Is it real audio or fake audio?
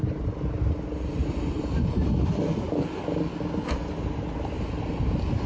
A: real